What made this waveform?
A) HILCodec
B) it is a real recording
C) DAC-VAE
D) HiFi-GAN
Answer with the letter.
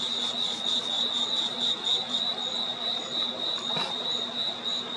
B